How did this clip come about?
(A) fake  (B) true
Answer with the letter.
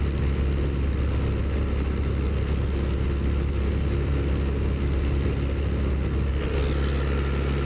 B